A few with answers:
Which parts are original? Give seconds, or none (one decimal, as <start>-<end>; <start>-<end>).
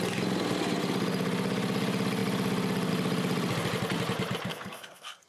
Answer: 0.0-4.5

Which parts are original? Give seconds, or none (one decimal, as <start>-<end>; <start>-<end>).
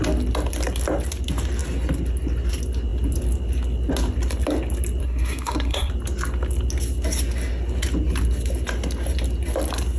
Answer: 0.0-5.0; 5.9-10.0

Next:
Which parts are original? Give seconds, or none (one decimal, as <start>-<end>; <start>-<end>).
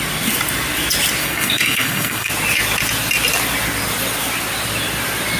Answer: 0.0-1.2; 2.3-5.4